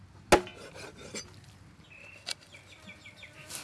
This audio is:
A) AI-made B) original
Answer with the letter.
B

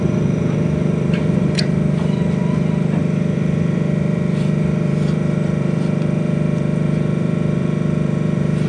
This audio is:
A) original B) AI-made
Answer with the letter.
B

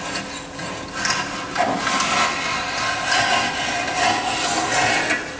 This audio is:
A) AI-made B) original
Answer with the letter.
B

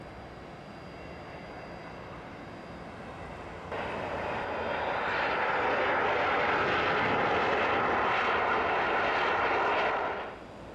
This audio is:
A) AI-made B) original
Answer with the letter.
B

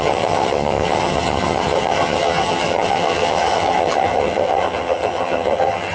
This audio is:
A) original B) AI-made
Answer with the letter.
B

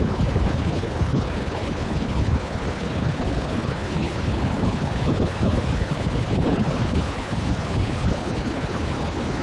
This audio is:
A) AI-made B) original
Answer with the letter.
A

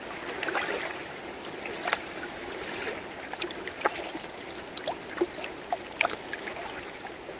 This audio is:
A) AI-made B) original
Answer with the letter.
B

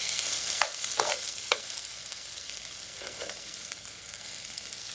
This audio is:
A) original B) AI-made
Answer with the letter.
B